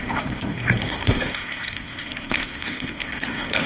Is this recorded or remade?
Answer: remade